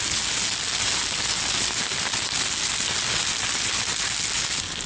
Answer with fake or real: real